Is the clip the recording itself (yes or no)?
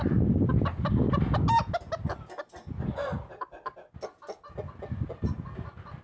yes